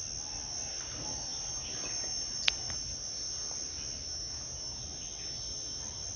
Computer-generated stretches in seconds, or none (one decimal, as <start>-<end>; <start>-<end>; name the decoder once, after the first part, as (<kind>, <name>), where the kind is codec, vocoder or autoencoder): none